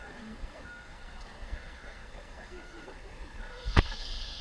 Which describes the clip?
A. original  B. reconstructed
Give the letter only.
B